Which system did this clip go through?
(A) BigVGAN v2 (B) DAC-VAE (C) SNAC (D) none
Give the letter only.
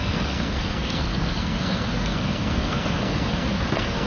C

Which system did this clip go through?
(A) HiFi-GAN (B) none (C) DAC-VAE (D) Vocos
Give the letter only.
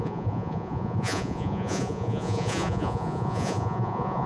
D